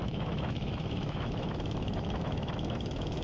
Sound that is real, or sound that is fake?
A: fake